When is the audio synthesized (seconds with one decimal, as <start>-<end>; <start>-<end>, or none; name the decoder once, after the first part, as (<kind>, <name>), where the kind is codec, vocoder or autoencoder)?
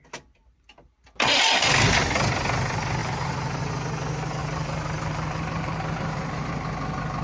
3.0-3.7 (vocoder, BigVGAN v2); 4.4-6.5